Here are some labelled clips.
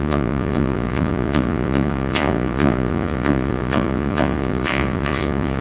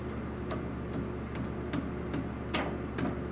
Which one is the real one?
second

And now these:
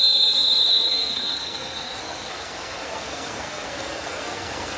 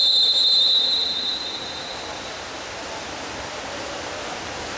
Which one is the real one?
second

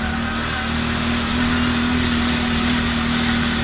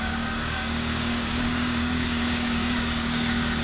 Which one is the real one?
first